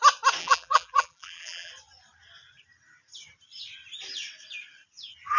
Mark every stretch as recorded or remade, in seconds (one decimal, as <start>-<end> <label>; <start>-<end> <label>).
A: 0.0-0.4 recorded; 0.4-1.7 remade; 1.7-5.4 recorded